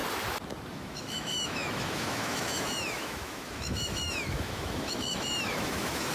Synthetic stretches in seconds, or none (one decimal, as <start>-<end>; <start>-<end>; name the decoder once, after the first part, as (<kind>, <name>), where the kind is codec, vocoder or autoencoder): 0.7-6.1 (autoencoder, DAC-VAE)